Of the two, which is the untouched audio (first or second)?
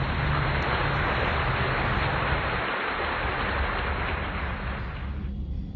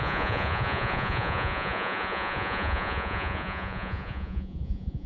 first